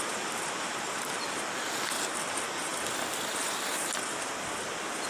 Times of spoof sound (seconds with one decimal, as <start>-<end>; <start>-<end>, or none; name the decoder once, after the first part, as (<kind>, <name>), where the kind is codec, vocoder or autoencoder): 2.7-4.3 (vocoder, BigVGAN v2)